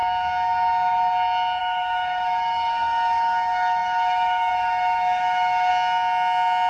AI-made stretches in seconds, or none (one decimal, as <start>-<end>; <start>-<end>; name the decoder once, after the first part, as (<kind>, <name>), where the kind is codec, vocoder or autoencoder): 1.6-5.7 (autoencoder, DAC-VAE)